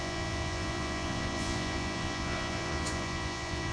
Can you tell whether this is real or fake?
fake